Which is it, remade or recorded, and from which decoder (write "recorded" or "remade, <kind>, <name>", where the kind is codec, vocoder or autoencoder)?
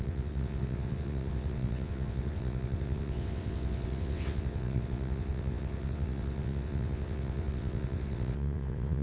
remade, vocoder, WaveNeXt